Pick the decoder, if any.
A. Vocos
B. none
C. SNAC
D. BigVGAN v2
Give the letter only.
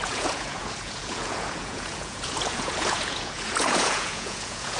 A